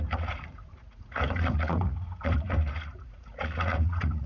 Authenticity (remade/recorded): remade